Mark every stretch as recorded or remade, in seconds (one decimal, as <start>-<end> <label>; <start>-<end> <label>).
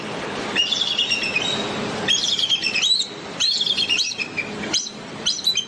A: 0.0-0.6 remade; 0.6-1.4 recorded; 1.4-5.7 remade